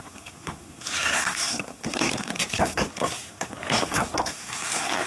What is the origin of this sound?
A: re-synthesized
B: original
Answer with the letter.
A